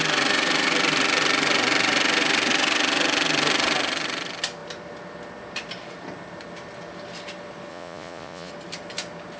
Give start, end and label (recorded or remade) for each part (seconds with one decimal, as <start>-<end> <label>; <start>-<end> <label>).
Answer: 0.0-7.7 recorded; 7.7-8.5 remade; 8.5-9.4 recorded